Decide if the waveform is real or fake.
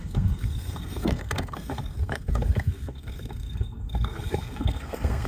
fake